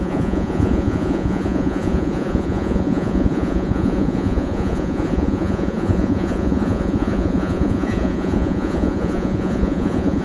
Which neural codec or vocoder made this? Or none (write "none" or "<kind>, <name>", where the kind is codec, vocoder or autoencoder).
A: vocoder, Vocos